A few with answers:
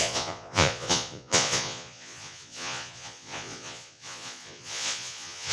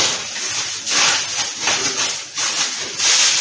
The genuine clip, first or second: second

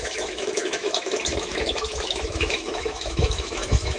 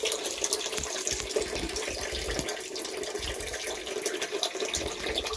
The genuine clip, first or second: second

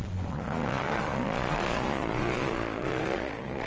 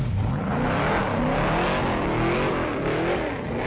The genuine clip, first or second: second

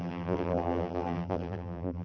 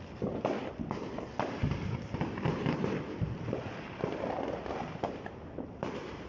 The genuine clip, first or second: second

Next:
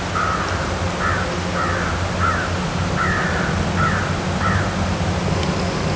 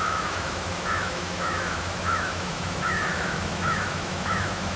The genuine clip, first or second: first